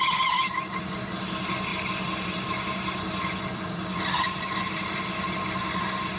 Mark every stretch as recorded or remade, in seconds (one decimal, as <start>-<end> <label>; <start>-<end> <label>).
0.0-6.2 recorded